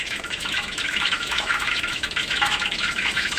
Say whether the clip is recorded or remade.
remade